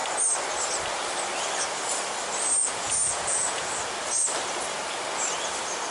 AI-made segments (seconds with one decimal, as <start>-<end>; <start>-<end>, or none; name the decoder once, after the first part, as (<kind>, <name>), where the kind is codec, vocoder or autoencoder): 2.6-3.7 (vocoder, Vocos)